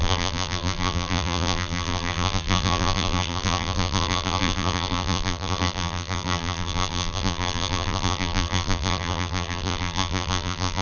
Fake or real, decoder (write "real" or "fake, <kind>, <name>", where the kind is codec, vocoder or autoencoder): fake, vocoder, BigVGAN v2